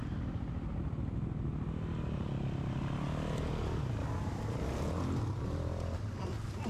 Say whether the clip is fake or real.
real